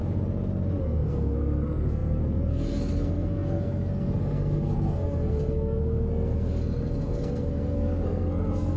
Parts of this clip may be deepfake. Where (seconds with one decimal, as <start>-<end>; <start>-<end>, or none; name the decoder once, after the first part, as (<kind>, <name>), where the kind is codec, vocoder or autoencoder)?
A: 0.8-8.8 (codec, SNAC)